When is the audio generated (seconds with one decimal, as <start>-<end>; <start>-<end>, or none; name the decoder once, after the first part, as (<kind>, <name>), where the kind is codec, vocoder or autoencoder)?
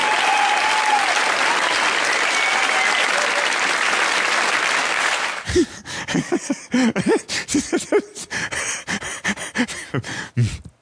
4.8-6.6 (codec, DAC)